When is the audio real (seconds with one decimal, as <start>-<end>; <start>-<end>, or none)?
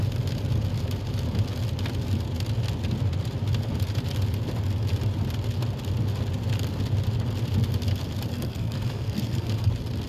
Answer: 0.0-8.3; 9.7-10.1